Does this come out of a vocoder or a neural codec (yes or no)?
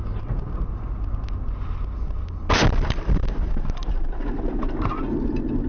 no